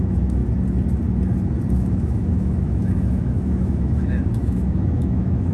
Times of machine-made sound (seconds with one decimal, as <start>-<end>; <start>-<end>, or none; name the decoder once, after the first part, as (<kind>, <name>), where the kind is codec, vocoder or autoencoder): 0.0-0.4 (autoencoder, DAC-VAE); 1.7-5.5